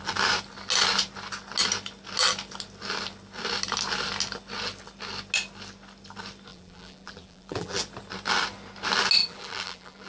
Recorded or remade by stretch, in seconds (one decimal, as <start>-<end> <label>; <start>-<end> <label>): 0.0-6.5 recorded; 6.5-7.8 remade; 7.8-9.2 recorded; 9.2-10.1 remade